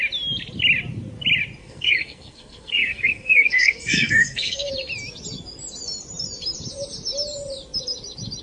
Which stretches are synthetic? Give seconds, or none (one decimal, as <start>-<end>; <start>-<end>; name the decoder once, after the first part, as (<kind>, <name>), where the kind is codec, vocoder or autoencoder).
1.6-4.7 (codec, SNAC)